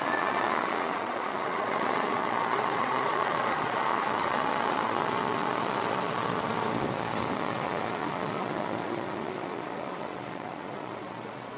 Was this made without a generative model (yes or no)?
no